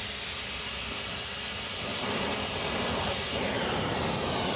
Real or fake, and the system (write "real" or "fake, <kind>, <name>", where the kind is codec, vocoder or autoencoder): real